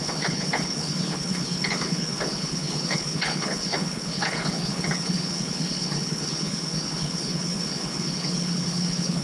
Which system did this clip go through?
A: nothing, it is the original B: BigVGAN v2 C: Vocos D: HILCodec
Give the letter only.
D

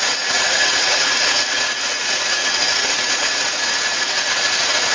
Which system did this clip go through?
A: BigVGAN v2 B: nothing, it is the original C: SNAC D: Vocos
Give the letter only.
D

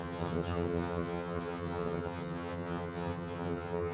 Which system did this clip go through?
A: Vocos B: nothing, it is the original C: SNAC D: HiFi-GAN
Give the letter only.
D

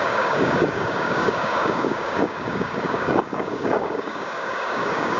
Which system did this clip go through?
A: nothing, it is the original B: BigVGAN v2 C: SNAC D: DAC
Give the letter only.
D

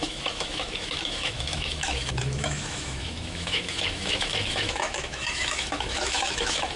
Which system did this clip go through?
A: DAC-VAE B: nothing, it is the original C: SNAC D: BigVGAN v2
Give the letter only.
A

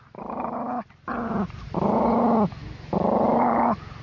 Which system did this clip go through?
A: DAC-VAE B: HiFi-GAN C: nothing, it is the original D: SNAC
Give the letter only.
C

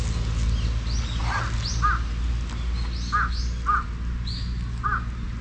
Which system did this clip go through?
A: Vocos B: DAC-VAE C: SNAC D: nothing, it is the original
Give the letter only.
D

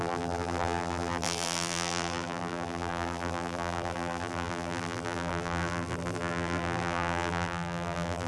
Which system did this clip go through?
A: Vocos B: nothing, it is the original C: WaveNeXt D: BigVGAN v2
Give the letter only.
D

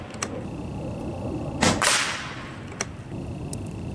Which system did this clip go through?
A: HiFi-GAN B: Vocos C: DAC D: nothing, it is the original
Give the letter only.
D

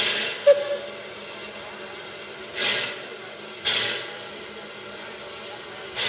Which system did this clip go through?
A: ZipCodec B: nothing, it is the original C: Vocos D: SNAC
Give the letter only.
B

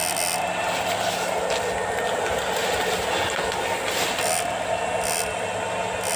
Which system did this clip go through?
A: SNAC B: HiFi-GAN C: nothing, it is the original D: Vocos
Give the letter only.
C